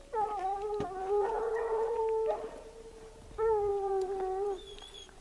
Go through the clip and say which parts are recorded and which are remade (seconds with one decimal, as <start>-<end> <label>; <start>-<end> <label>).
0.0-1.0 recorded; 1.0-2.0 remade; 2.0-3.7 recorded; 3.7-5.2 remade

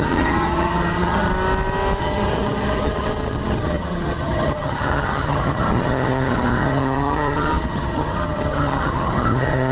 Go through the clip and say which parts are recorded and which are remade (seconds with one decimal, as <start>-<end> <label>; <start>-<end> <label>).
0.0-1.3 remade; 1.3-2.0 recorded; 2.0-9.7 remade

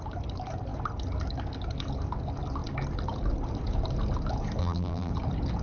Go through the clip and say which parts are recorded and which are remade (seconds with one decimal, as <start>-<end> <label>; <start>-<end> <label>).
0.0-4.6 recorded; 4.6-5.1 remade; 5.1-5.6 recorded

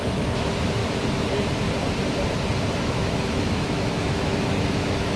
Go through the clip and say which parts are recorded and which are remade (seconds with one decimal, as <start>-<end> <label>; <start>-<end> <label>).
0.0-0.8 remade; 0.8-2.7 recorded; 2.7-5.2 remade

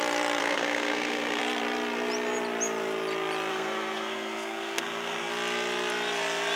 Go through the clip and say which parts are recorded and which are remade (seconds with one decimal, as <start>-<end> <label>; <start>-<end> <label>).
0.0-0.4 recorded; 0.4-1.4 remade; 1.4-3.5 recorded; 3.5-5.3 remade; 5.3-6.6 recorded